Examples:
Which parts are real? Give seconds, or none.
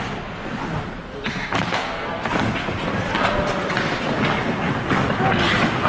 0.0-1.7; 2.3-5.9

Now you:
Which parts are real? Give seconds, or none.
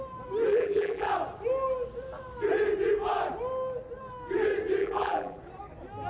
0.0-0.5; 1.1-4.8; 5.4-6.1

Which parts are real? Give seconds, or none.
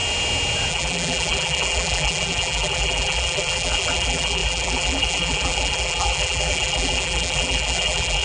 0.0-0.7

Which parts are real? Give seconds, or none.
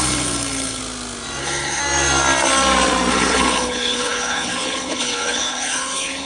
0.8-1.4; 1.8-3.1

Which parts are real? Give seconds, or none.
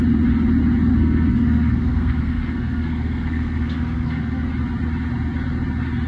0.0-0.9; 4.5-6.1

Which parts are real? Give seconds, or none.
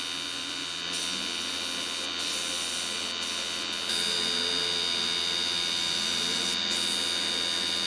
0.0-7.9